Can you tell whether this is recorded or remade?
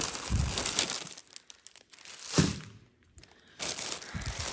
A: recorded